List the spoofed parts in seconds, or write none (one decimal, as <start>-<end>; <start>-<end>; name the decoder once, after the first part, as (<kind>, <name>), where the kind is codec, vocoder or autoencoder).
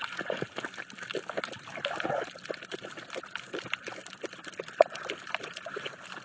4.0-4.5 (vocoder, BigVGAN v2)